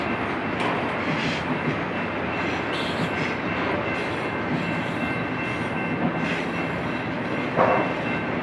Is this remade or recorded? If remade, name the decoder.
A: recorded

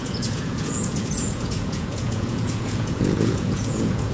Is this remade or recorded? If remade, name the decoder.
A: remade, vocoder, Vocos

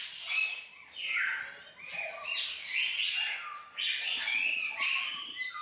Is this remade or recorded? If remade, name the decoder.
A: recorded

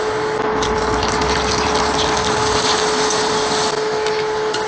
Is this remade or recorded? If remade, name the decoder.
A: recorded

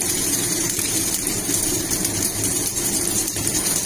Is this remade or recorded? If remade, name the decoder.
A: remade, vocoder, BigVGAN v2